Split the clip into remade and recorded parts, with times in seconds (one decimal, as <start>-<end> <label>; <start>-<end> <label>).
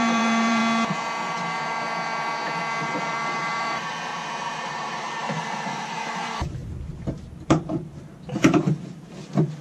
0.0-0.6 remade; 0.6-3.0 recorded; 3.0-7.9 remade; 7.9-8.4 recorded; 8.4-9.6 remade